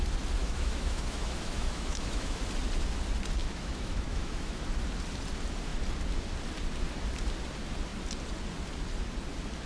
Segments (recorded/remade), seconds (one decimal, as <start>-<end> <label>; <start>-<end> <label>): 0.0-0.4 recorded; 0.4-2.4 remade; 2.4-3.4 recorded; 3.4-4.6 remade; 4.6-9.7 recorded